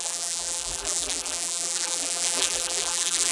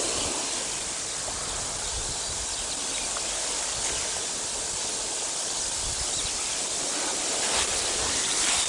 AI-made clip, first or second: first